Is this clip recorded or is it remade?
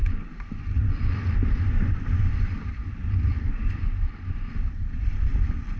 recorded